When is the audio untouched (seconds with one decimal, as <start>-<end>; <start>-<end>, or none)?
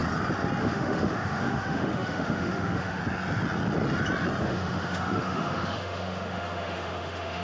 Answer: 0.0-0.6; 3.0-4.4